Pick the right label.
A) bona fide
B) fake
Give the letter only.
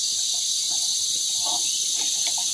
A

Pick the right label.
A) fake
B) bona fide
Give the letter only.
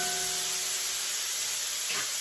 B